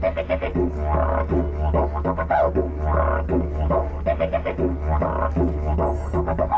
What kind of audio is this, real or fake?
real